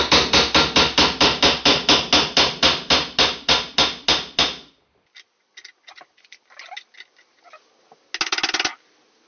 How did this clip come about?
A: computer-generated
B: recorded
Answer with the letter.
B